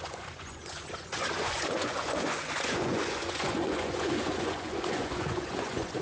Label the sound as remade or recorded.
remade